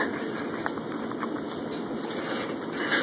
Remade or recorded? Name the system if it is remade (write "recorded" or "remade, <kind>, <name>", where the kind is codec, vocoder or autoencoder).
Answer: recorded